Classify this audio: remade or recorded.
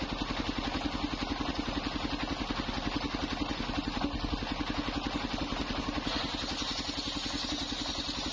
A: recorded